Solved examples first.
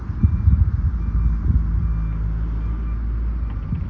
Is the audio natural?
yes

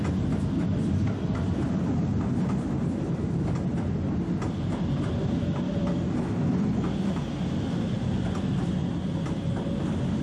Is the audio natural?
yes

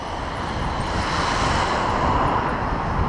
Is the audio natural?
yes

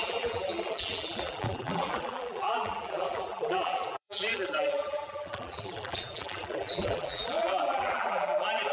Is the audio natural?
no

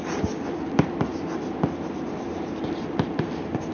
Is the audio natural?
yes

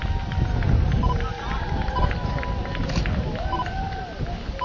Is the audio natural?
yes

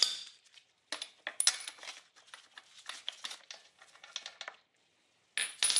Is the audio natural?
yes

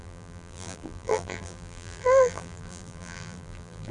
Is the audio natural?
no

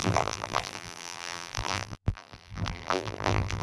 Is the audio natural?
no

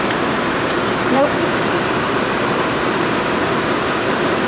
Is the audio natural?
no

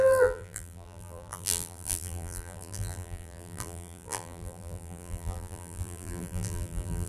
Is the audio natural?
no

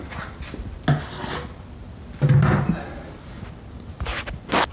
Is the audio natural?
yes